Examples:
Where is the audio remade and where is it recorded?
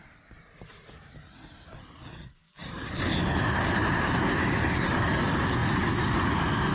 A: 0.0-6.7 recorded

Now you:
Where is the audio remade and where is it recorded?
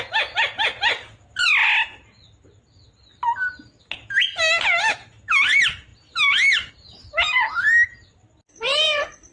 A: 0.0-9.3 recorded